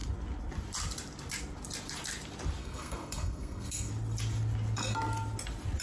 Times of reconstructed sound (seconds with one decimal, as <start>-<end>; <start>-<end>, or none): 2.6-3.9